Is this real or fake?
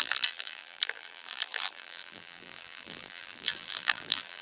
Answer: fake